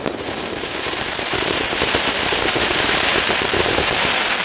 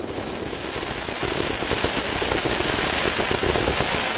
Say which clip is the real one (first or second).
second